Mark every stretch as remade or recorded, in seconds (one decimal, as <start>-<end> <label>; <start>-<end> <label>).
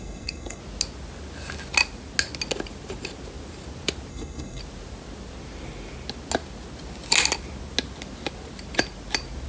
0.0-0.6 remade; 0.6-4.1 recorded; 4.1-4.6 remade; 4.6-9.5 recorded